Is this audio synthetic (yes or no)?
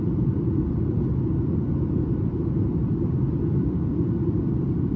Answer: no